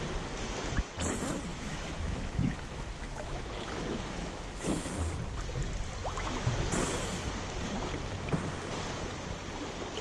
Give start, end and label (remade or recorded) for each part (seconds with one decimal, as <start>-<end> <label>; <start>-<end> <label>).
0.0-1.5 recorded; 1.5-4.8 remade; 4.8-6.0 recorded; 6.0-6.5 remade; 6.5-10.0 recorded